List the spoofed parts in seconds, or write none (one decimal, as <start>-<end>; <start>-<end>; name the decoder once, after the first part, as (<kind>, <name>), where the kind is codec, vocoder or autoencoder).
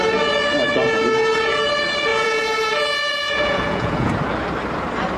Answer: 2.1-2.7 (vocoder, Vocos); 3.1-4.1